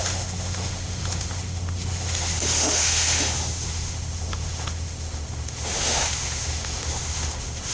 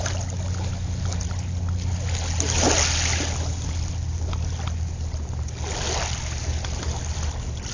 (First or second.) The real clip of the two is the second